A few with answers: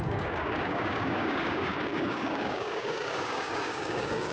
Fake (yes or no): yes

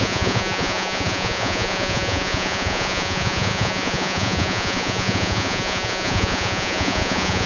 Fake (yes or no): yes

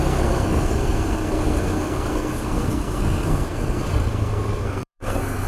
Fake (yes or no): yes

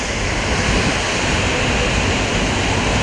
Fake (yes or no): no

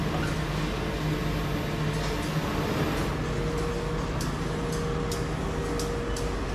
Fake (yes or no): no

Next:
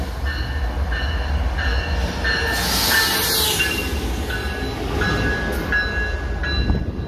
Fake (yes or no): no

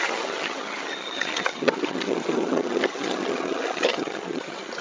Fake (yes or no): yes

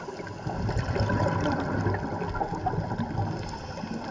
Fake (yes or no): no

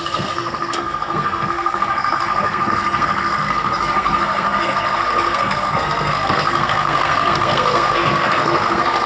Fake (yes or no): yes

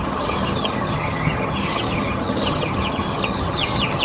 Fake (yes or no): yes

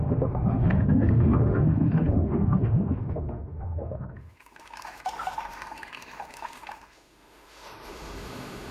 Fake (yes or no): yes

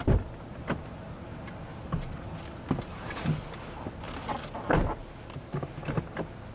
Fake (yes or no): no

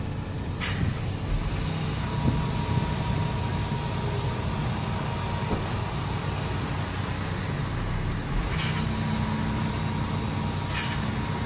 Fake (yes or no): no